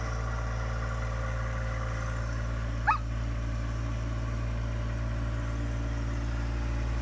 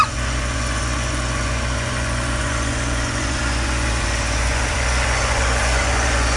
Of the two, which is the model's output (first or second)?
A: second